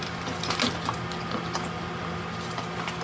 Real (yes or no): yes